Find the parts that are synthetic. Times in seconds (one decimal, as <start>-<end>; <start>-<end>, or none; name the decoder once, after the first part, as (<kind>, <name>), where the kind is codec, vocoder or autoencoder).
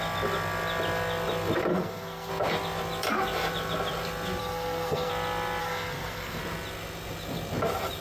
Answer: 1.7-2.3 (codec, SNAC); 4.4-5.1; 5.6-6.4